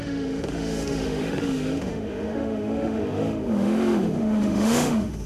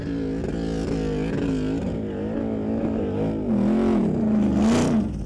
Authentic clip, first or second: second